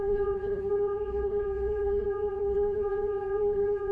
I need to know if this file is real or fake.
fake